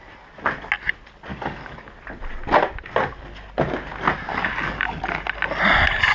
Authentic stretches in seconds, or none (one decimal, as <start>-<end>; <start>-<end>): 0.0-1.3; 1.9-4.3; 5.0-6.1